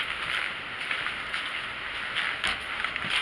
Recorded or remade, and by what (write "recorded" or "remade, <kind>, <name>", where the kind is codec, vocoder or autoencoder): recorded